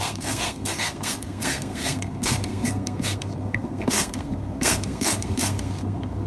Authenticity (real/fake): fake